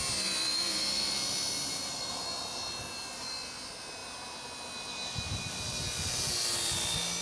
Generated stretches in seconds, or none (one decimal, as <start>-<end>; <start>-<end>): none